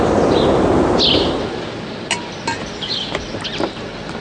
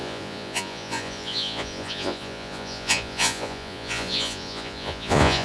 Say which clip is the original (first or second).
first